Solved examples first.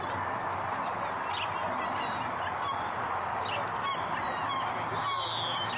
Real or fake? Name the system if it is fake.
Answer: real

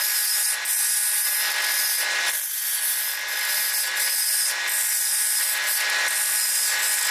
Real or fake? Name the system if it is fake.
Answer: real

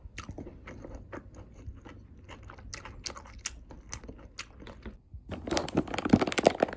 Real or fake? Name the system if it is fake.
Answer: real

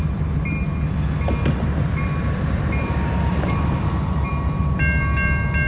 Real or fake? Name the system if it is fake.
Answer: real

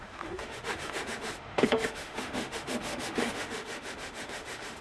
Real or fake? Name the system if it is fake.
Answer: fake, autoencoder, DAC-VAE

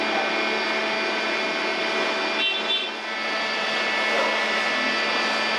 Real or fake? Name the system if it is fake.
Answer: real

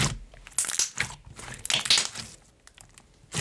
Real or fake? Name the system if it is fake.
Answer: real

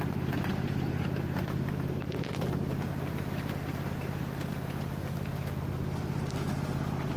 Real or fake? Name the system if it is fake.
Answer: real